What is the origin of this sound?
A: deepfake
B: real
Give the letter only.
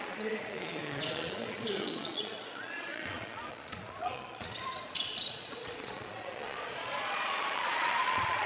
A